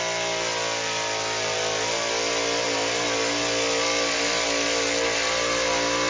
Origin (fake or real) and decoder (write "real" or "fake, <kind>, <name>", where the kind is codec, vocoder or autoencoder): real